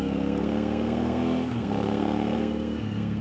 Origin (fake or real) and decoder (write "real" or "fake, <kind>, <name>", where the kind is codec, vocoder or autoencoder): fake, codec, SNAC